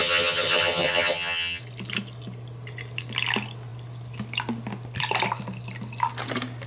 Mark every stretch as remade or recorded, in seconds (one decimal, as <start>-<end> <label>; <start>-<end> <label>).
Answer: 0.0-1.6 remade; 1.6-6.7 recorded